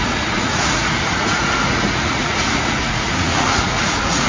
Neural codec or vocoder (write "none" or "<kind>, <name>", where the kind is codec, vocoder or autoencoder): vocoder, Vocos